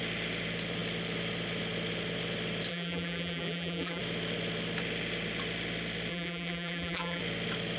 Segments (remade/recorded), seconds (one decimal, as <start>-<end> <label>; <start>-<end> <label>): 0.0-2.7 recorded; 2.7-4.0 remade; 4.0-6.1 recorded; 6.1-7.2 remade; 7.2-7.8 recorded